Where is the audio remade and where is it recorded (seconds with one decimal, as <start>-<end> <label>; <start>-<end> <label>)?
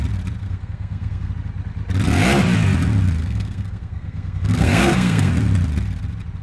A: 0.0-0.4 recorded; 0.4-1.3 remade; 1.3-3.2 recorded; 3.2-5.3 remade; 5.3-6.4 recorded